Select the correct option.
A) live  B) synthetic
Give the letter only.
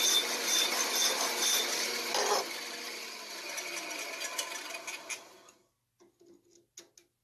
A